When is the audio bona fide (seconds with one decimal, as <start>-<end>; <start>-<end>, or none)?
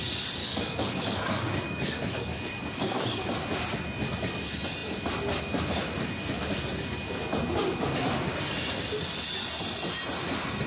0.0-0.4; 3.2-10.7